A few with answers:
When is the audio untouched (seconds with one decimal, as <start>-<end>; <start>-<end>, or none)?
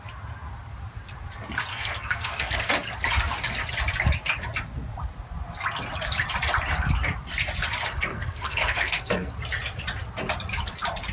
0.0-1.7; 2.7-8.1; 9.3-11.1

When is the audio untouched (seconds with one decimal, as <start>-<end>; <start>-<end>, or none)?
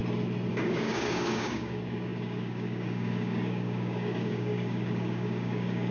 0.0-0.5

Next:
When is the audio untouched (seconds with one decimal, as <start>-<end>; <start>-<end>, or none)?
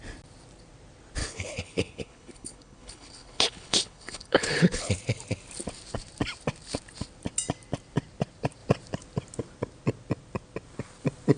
0.0-1.2; 4.9-11.4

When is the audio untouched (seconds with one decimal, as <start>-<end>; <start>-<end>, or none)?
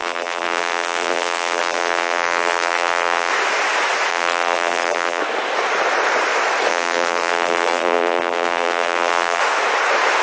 3.3-4.1; 5.2-6.7; 9.4-10.2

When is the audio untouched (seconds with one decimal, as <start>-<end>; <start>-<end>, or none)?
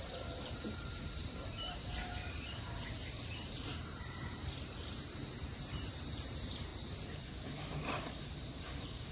6.7-7.6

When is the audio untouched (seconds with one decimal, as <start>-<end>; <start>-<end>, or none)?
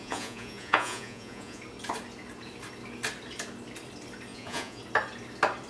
1.6-4.3; 4.8-5.7